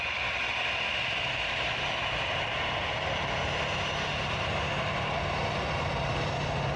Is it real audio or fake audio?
real